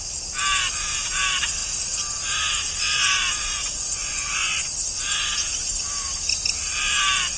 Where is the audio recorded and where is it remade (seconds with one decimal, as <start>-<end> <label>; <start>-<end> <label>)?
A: 0.0-3.4 recorded; 3.4-4.7 remade; 4.7-7.4 recorded